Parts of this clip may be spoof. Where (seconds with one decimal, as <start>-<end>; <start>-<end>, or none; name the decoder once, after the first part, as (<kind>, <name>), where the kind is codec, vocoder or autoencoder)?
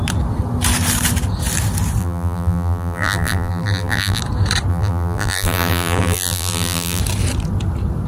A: 2.0-4.2 (vocoder, BigVGAN v2); 4.7-7.0